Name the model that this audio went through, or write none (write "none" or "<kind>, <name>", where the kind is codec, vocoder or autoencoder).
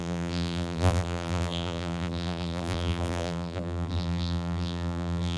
vocoder, BigVGAN v2